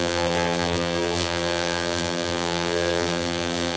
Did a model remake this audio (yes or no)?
yes